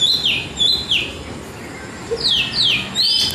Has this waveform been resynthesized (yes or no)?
no